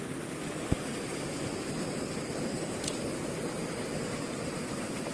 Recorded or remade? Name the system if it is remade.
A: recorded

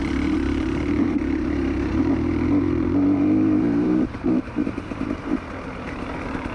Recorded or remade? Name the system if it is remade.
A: remade, vocoder, BigVGAN v2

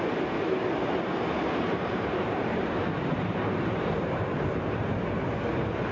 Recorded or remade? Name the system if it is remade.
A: remade, vocoder, BigVGAN v2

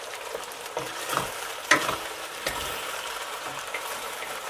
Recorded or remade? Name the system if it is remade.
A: remade, vocoder, BigVGAN v2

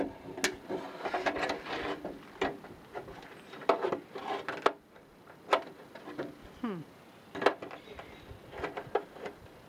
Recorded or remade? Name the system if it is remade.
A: recorded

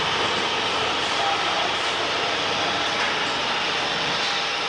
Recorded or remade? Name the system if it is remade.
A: remade, vocoder, BigVGAN v2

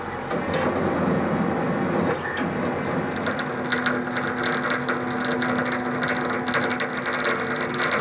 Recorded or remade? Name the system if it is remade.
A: recorded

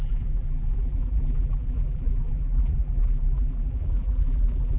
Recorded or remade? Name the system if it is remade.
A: remade, vocoder, BigVGAN v2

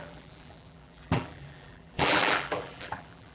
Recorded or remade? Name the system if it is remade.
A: remade, vocoder, BigVGAN v2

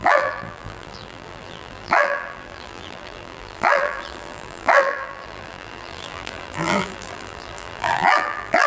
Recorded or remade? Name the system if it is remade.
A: remade, vocoder, BigVGAN v2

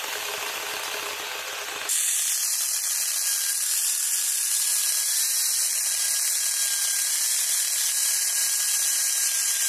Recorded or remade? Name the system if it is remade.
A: recorded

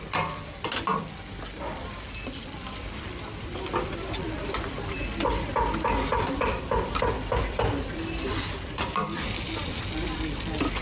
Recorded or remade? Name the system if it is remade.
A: remade, vocoder, BigVGAN v2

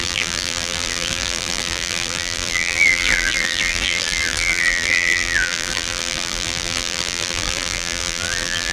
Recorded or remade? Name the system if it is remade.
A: remade, vocoder, BigVGAN v2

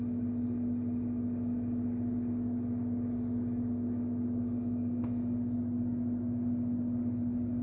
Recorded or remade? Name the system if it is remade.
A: recorded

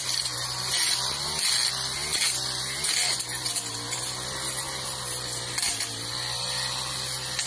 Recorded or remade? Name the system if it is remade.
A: recorded